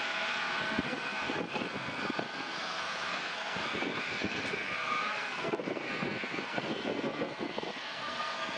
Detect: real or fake fake